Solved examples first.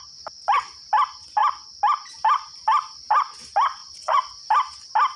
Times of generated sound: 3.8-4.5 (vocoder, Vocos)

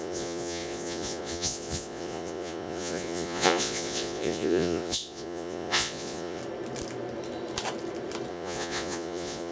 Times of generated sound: 0.0-6.4 (vocoder, Vocos); 8.3-9.5